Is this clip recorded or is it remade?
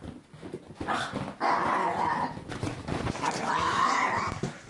recorded